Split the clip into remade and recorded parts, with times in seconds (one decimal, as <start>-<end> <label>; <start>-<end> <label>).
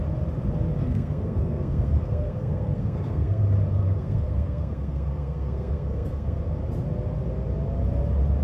0.0-0.8 recorded; 0.8-3.4 remade; 3.4-3.8 recorded; 3.8-6.4 remade; 6.4-8.4 recorded